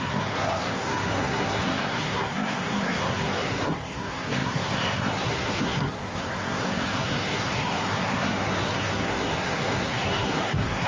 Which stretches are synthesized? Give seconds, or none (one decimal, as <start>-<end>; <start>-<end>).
0.0-10.9